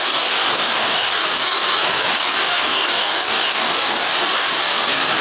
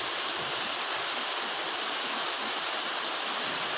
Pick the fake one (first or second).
first